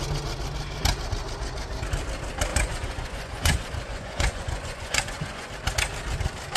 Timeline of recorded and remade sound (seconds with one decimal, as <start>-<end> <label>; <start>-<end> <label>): 0.0-2.5 recorded; 2.5-5.5 remade; 5.5-6.6 recorded